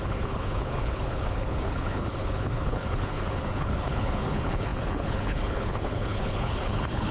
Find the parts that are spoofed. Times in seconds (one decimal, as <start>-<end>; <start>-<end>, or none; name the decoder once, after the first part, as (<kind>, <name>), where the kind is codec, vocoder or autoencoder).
0.0-7.1 (codec, HILCodec)